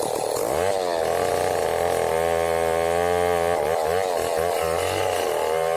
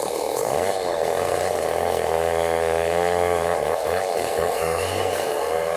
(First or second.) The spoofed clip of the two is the second